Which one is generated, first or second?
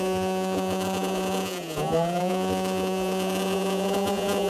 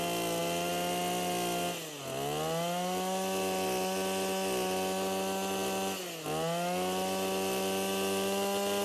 first